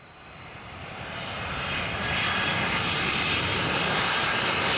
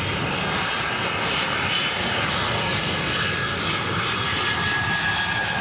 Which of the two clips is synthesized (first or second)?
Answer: first